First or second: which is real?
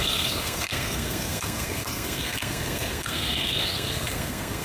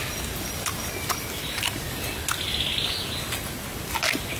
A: second